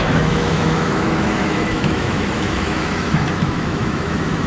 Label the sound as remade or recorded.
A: remade